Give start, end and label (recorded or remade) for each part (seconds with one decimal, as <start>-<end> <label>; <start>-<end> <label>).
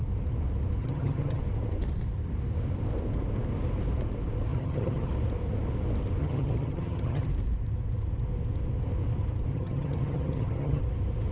0.0-0.8 recorded; 0.8-1.4 remade; 1.4-4.5 recorded; 4.5-5.1 remade; 5.1-6.2 recorded; 6.2-7.3 remade; 7.3-9.5 recorded; 9.5-10.8 remade; 10.8-11.3 recorded